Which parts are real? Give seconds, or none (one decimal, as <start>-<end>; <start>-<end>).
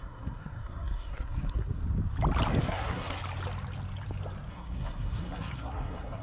1.8-2.6; 3.2-4.5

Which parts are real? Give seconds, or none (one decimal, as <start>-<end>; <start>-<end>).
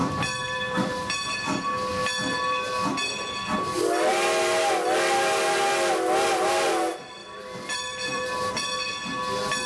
0.9-7.2; 8.5-9.7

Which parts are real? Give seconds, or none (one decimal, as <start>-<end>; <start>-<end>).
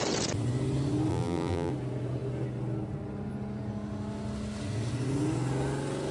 0.0-1.1; 1.7-6.1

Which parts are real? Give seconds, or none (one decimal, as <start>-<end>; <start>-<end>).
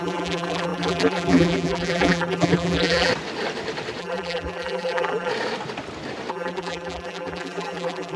3.1-4.0; 5.3-6.3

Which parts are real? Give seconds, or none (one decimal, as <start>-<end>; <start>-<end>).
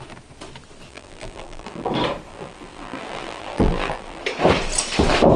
0.0-0.9; 1.9-2.3; 4.2-5.4